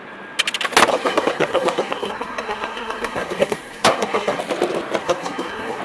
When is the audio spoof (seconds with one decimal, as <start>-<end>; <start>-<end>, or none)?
0.9-4.4; 5.0-5.8

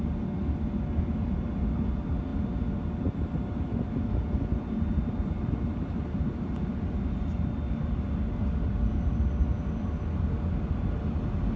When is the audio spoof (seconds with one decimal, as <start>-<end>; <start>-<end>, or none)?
none